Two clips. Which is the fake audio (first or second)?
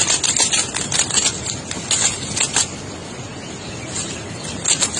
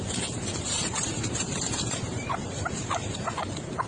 second